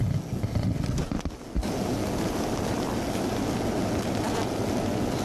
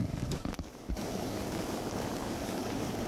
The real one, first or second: first